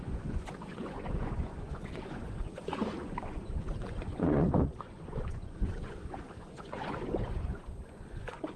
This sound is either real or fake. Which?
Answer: fake